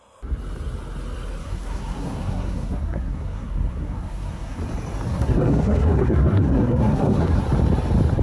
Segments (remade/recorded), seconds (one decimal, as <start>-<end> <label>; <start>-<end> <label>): 0.0-1.4 recorded; 1.4-4.6 remade; 4.6-5.1 recorded; 5.1-7.4 remade; 7.4-8.2 recorded